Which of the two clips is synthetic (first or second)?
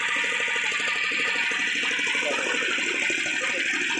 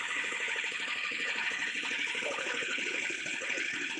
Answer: second